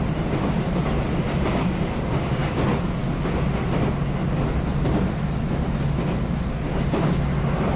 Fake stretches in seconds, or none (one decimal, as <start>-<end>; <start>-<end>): 1.5-2.5